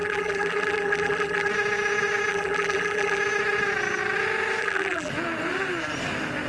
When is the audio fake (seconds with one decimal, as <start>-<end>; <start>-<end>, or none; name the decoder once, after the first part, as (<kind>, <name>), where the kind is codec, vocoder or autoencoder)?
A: 0.0-1.5 (vocoder, BigVGAN v2); 2.3-3.2; 4.6-5.1